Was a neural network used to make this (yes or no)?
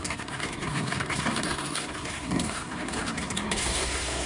yes